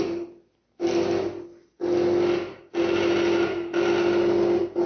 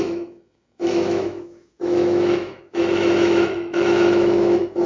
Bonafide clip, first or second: first